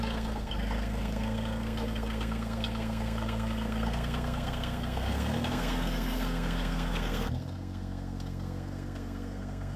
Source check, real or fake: fake